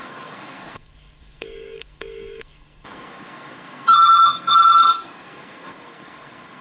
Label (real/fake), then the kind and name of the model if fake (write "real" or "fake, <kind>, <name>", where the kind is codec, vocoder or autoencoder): fake, codec, SNAC